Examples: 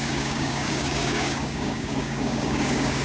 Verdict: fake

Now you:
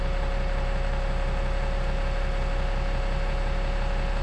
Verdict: real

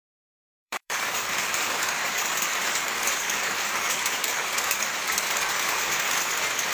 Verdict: fake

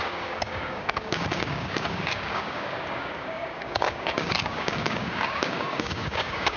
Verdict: fake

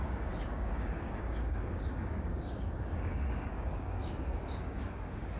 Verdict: fake